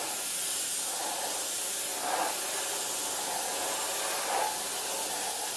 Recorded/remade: recorded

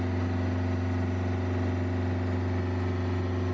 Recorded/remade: recorded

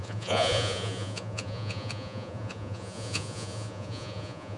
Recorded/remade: remade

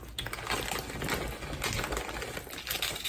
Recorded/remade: recorded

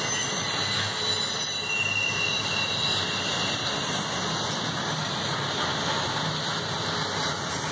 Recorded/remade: recorded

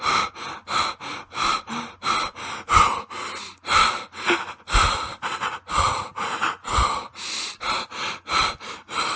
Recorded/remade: recorded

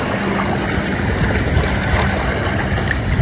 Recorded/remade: recorded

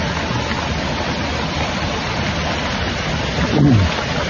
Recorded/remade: recorded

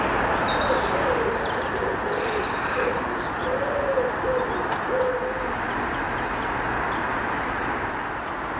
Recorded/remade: recorded